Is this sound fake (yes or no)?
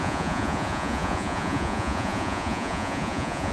yes